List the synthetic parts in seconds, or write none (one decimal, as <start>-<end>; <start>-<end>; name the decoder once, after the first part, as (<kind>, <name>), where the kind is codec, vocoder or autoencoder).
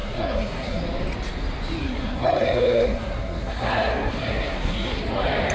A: 0.0-0.8 (codec, SNAC); 1.8-5.0